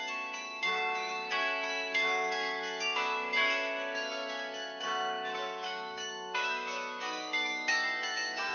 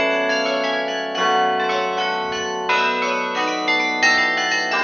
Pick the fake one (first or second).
first